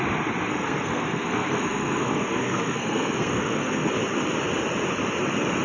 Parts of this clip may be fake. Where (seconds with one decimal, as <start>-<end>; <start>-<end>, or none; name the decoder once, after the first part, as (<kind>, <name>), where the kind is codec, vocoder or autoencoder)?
0.5-3.9 (codec, SNAC)